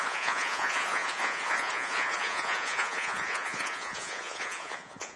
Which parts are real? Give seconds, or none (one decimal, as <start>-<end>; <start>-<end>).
none